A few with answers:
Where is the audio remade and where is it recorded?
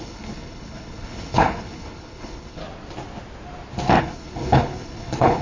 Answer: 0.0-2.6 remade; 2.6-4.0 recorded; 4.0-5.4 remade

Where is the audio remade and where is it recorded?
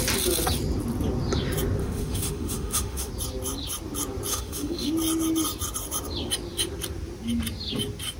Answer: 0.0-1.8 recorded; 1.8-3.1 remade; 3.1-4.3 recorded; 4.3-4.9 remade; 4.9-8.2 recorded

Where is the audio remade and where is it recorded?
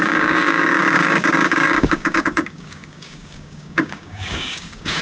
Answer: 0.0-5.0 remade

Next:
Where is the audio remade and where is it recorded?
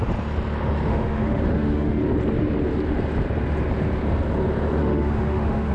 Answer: 0.0-0.9 recorded; 0.9-2.0 remade; 2.0-4.8 recorded; 4.8-5.7 remade